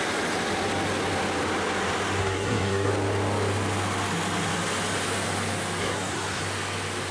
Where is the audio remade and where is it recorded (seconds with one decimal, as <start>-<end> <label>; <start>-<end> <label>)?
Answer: 0.0-2.2 recorded; 2.2-2.9 remade; 2.9-5.8 recorded; 5.8-6.4 remade; 6.4-7.1 recorded